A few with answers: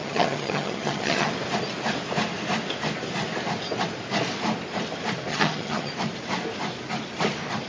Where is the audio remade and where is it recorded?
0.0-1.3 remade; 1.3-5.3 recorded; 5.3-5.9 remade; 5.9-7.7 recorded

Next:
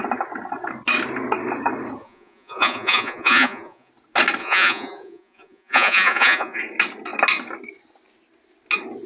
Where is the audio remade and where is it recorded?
0.0-2.0 recorded; 2.0-3.9 remade; 3.9-4.4 recorded; 4.4-6.6 remade; 6.6-9.1 recorded

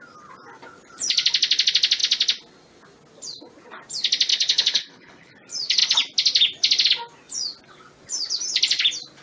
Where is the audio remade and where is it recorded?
0.0-4.3 recorded; 4.3-5.3 remade; 5.3-9.2 recorded

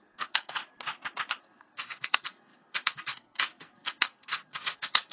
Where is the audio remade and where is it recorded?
0.0-0.6 remade; 0.6-1.4 recorded; 1.4-5.1 remade

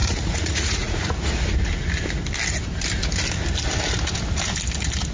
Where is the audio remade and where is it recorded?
0.0-1.3 remade; 1.3-5.1 recorded